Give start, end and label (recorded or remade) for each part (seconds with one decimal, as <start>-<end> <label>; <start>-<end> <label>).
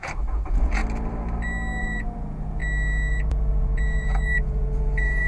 0.0-0.8 remade; 0.8-1.8 recorded; 1.8-2.6 remade; 2.6-3.1 recorded; 3.1-5.3 remade